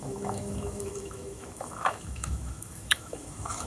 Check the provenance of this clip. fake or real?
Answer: fake